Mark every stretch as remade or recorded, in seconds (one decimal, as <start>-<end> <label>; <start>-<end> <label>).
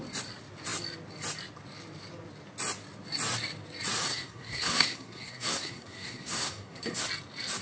0.0-4.1 recorded; 4.1-7.0 remade; 7.0-7.6 recorded